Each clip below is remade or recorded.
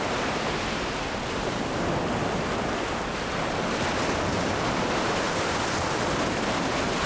recorded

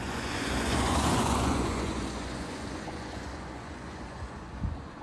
remade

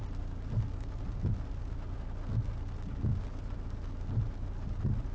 recorded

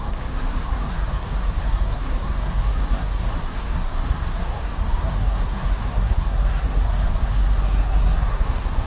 remade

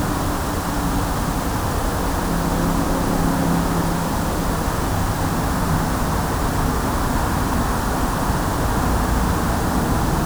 recorded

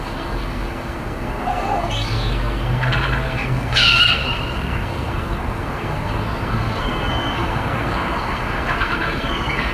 remade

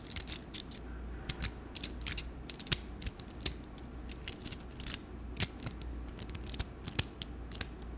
recorded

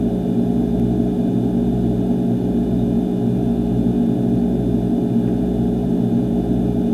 recorded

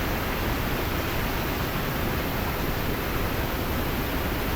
recorded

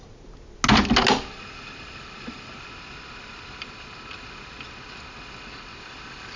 recorded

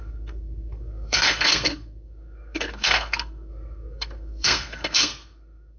remade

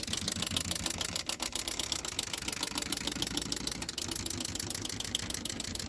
recorded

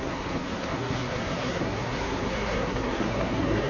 remade